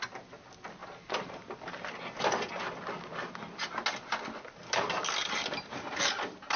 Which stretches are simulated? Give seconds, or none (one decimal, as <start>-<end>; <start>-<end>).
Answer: 5.2-6.0